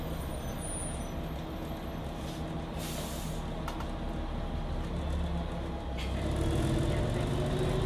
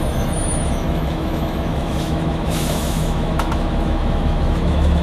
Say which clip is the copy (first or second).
second